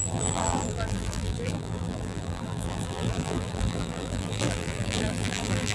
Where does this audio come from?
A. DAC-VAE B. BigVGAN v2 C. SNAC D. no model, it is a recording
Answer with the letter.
B